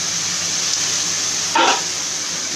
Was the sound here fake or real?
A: real